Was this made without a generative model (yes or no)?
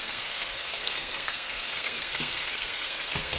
no